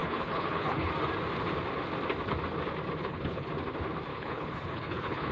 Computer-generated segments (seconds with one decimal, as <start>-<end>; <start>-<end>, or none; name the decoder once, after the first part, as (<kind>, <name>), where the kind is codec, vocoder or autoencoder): 0.0-0.9 (codec, HILCodec); 3.0-3.5; 4.1-5.3